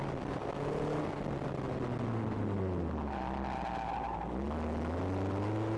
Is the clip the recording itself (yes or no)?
yes